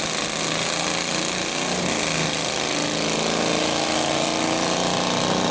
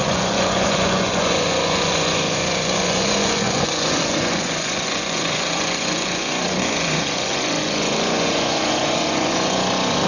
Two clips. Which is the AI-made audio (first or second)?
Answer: second